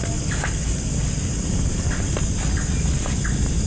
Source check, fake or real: real